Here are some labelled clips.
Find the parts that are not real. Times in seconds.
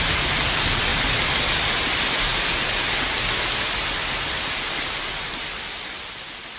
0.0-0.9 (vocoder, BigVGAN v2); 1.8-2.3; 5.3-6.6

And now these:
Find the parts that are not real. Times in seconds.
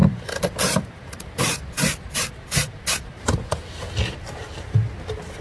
0.0-3.2 (vocoder, BigVGAN v2); 4.4-4.9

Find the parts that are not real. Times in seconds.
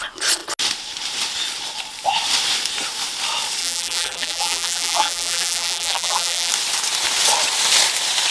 3.6-6.5 (vocoder, BigVGAN v2)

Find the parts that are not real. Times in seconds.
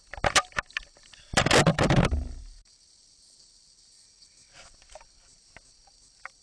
1.7-3.9 (vocoder, BigVGAN v2)